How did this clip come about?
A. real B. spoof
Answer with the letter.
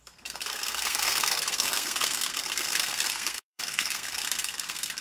B